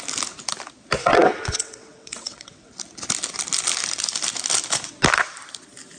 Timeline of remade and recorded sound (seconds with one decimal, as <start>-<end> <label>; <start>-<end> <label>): 0.0-1.0 recorded; 1.0-2.7 remade; 2.7-6.0 recorded